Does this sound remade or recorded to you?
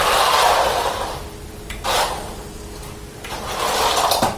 recorded